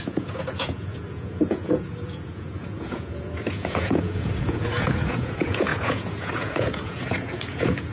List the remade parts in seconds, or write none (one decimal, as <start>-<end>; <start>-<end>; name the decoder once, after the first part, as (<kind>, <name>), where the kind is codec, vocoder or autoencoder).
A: 0.0-7.9 (vocoder, Vocos)